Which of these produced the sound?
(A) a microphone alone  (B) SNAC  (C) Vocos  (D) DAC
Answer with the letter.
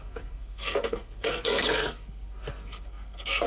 B